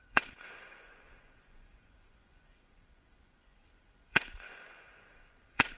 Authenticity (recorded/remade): remade